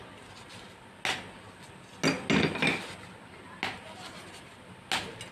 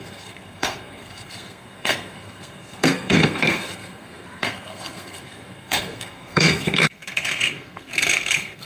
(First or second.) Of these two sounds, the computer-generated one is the second